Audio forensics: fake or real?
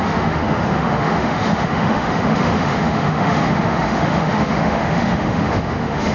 fake